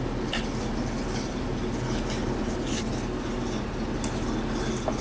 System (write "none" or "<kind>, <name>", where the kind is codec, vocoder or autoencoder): none